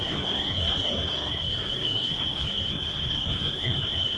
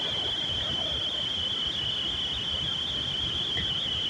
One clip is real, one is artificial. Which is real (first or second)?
second